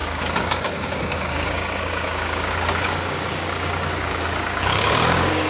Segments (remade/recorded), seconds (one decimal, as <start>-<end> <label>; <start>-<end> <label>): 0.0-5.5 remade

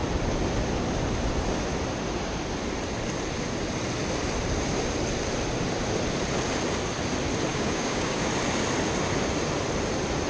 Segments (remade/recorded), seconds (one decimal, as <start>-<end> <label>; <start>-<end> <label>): 0.0-7.5 recorded; 7.5-8.2 remade; 8.2-10.3 recorded

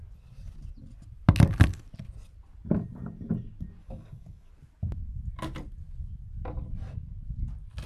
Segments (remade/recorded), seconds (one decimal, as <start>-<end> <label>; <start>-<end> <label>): 0.0-3.8 recorded; 3.8-4.5 remade; 4.5-7.9 recorded

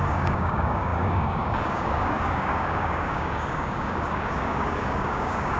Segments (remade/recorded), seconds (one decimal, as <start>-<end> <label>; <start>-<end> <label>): 0.0-5.6 remade

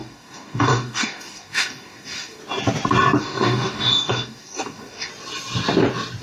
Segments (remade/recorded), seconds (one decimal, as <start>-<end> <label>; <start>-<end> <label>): 0.0-2.4 remade; 2.4-3.2 recorded; 3.2-5.1 remade; 5.1-6.2 recorded

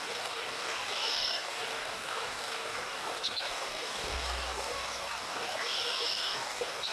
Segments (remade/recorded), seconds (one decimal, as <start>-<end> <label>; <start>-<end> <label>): 0.0-6.9 remade

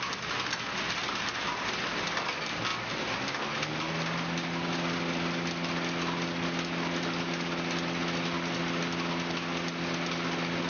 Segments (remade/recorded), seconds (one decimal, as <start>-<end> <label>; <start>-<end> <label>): 0.0-10.7 recorded

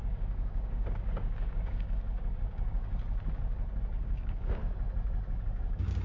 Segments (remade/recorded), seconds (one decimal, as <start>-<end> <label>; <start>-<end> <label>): 0.0-2.9 remade; 2.9-3.8 recorded; 3.8-4.6 remade; 4.6-5.3 recorded; 5.3-6.0 remade